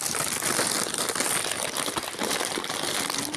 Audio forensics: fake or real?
real